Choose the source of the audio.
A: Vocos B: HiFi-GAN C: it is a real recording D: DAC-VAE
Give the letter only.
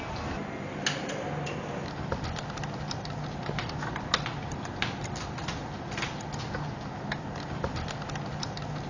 C